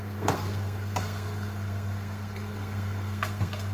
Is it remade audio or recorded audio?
remade